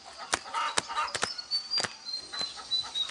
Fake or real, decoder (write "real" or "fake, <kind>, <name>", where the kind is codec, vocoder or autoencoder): real